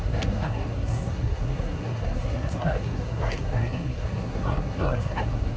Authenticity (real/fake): fake